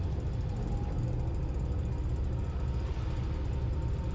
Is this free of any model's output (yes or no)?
yes